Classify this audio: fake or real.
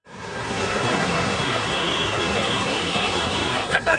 fake